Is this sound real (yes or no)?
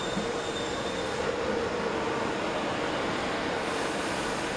yes